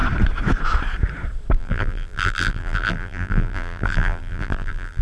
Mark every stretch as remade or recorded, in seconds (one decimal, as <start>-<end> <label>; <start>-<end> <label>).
0.0-1.6 recorded; 1.6-5.0 remade